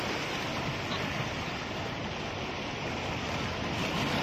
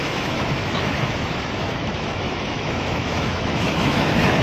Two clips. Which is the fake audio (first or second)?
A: second